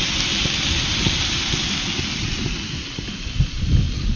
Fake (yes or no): no